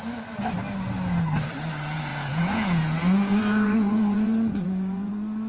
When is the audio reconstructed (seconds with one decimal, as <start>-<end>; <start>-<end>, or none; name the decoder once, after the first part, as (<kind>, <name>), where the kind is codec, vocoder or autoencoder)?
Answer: 2.1-5.1 (vocoder, Vocos)